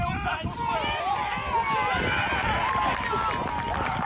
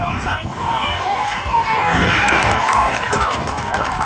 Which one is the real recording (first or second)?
first